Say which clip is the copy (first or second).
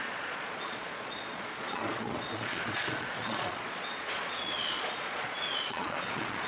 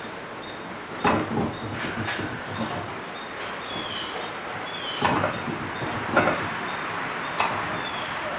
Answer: first